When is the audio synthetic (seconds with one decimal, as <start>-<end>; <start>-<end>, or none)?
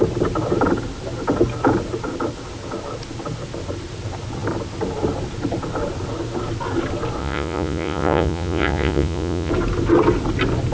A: 7.2-9.5